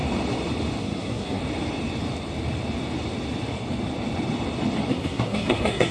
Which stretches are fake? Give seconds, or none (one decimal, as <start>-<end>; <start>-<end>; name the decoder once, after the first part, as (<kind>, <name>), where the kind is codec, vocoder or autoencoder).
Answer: 0.8-1.4 (codec, SNAC); 4.9-5.9